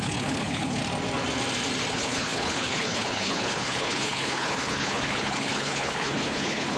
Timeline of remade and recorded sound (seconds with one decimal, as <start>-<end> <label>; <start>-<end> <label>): 0.0-0.8 remade; 0.8-1.9 recorded; 1.9-6.8 remade